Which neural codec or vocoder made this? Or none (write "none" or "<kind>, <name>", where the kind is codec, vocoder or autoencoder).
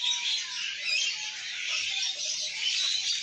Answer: none